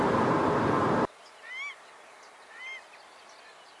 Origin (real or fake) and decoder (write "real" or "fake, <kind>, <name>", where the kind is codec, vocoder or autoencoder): real